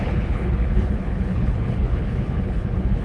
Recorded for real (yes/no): no